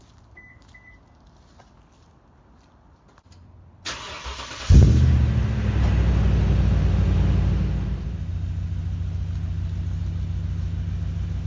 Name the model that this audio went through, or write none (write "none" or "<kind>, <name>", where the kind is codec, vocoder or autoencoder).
none